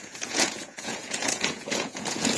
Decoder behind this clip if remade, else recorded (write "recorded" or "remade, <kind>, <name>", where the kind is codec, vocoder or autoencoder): remade, vocoder, Vocos